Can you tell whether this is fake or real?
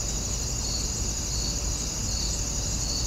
real